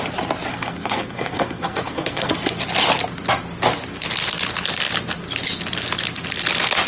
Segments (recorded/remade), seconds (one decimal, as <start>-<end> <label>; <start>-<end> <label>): 0.0-0.5 recorded; 0.5-2.3 remade; 2.3-6.9 recorded